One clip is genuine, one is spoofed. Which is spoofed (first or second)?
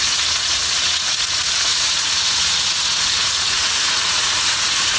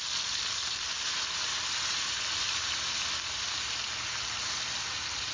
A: first